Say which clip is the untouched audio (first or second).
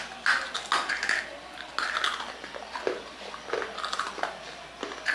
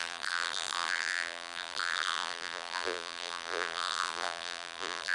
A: first